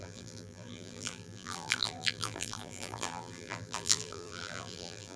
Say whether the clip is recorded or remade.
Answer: remade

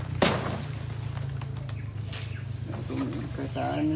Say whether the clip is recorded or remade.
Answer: recorded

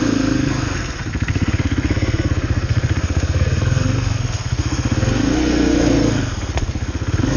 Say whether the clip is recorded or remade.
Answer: remade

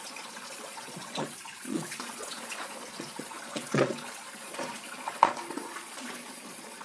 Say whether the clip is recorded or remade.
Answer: remade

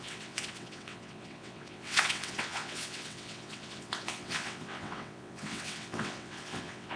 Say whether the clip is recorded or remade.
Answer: remade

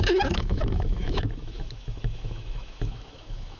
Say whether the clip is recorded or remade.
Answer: remade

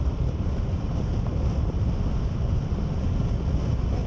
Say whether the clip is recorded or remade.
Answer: recorded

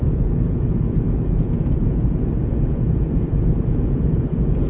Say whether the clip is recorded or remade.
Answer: remade